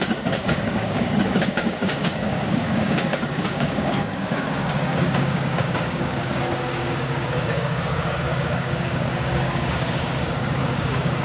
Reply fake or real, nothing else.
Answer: fake